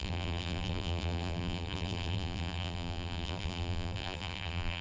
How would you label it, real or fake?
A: fake